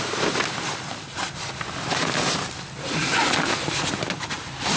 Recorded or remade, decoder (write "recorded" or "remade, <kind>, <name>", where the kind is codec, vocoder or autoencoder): recorded